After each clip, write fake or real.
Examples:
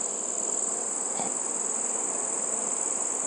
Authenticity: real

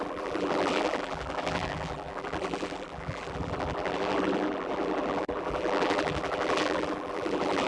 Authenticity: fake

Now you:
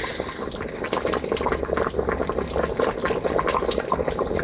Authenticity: real